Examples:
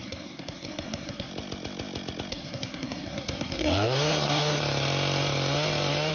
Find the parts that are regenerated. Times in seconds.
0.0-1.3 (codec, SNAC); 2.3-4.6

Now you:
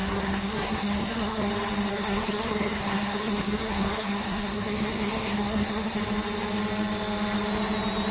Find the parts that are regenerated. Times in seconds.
0.0-1.5 (codec, SNAC); 1.9-6.0

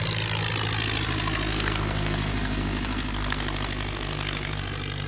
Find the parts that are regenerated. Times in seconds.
1.5-4.6 (codec, SNAC)